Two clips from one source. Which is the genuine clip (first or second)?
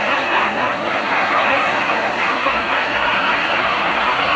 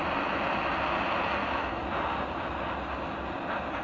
second